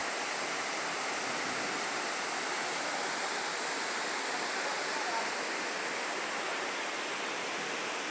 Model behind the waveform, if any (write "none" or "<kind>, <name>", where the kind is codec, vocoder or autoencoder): none